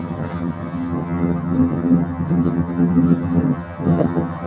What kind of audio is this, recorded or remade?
remade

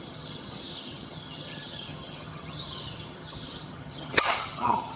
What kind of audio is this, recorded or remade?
remade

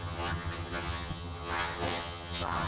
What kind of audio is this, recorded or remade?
remade